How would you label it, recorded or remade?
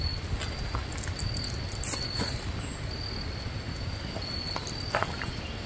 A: recorded